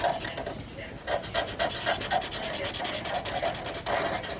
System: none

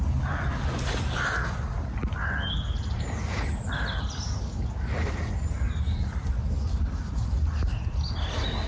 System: none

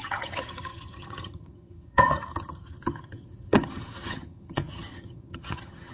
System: vocoder, HiFi-GAN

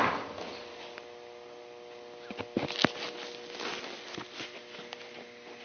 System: none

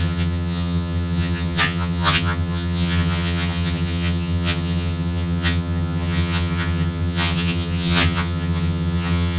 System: vocoder, HiFi-GAN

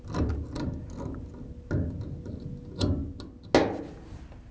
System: none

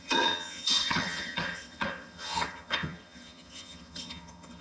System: vocoder, HiFi-GAN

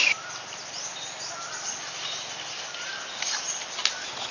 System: none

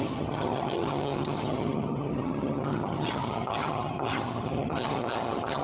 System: vocoder, HiFi-GAN